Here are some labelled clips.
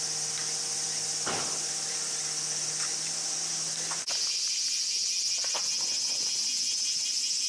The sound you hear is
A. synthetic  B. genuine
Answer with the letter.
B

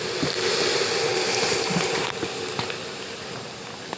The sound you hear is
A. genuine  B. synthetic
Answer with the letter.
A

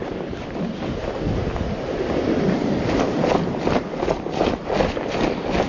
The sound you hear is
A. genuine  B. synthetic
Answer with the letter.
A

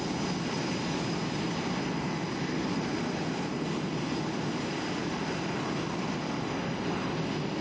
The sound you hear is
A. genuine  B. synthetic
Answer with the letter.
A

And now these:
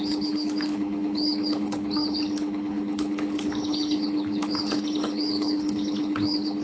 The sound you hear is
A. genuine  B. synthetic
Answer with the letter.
B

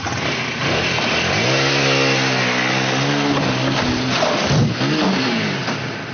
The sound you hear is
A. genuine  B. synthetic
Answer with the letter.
A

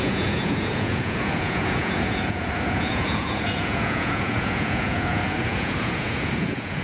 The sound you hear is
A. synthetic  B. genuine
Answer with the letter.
A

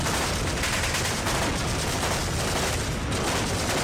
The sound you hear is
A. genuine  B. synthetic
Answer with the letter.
A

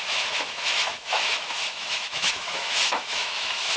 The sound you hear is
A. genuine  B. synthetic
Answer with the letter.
B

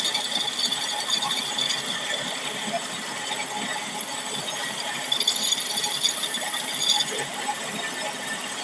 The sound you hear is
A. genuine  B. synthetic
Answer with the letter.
A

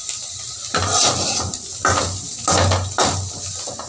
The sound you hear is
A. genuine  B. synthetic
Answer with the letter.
A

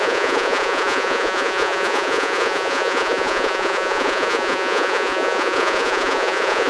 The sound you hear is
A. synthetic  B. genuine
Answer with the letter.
A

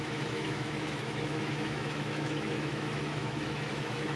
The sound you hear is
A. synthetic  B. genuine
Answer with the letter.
A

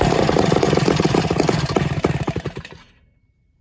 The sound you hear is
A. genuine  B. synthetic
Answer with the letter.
B